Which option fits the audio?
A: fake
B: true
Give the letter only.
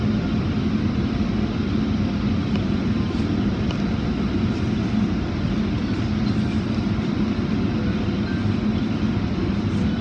B